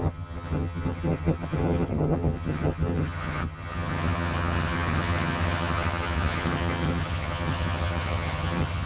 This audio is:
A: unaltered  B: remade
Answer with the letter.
B